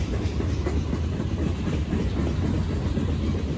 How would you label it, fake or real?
real